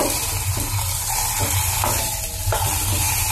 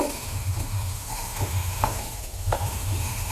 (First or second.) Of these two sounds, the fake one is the second